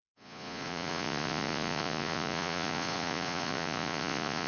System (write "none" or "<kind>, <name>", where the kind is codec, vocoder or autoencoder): vocoder, Vocos